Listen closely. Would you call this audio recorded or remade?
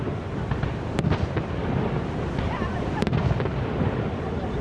recorded